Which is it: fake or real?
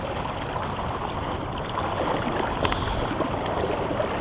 real